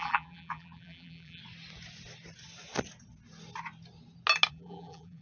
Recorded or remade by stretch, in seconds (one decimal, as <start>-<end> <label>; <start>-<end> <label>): 0.0-1.4 remade; 1.4-4.5 recorded; 4.5-5.2 remade